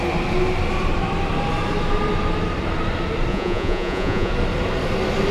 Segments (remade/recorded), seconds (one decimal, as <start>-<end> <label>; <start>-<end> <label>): 0.0-3.3 recorded; 3.3-4.3 remade; 4.3-5.3 recorded